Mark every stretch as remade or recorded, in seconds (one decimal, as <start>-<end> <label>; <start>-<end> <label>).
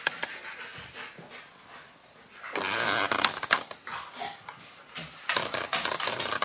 0.0-6.4 recorded